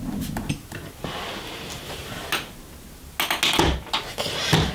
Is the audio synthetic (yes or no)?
no